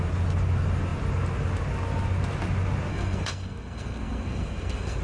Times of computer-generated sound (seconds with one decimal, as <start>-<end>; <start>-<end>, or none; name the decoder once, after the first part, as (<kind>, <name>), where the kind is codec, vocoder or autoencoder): 2.9-5.0 (codec, SNAC)